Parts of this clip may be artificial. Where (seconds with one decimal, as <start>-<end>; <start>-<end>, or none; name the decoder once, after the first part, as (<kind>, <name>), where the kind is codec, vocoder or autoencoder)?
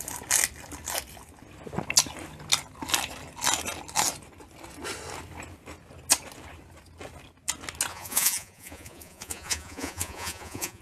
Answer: 7.9-10.8 (vocoder, Vocos)